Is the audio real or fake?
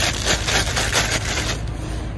real